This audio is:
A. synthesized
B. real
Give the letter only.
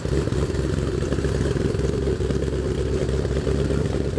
A